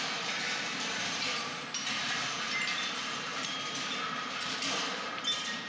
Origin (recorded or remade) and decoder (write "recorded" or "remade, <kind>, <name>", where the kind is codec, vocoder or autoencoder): remade, vocoder, BigVGAN v2